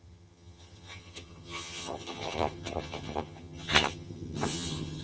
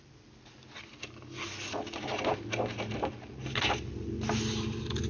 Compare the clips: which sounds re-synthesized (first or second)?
first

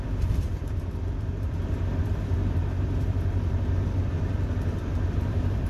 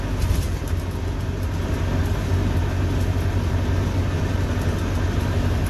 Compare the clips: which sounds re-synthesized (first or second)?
first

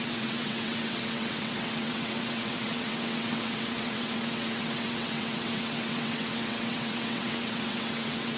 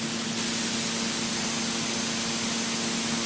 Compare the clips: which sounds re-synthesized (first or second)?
first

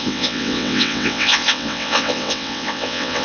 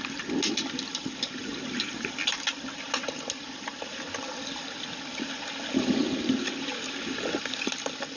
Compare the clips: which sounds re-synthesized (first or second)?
first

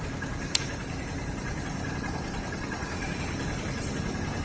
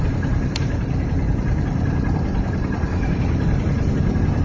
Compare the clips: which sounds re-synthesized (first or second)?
second